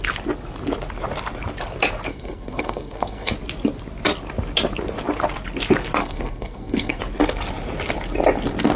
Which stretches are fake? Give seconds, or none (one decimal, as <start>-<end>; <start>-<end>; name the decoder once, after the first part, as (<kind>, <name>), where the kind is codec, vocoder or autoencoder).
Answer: 2.1-3.3 (codec, SNAC); 6.0-7.0